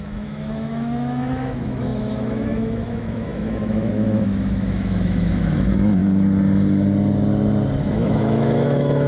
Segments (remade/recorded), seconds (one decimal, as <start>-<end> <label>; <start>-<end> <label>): 0.0-6.0 remade; 6.0-7.8 recorded; 7.8-9.1 remade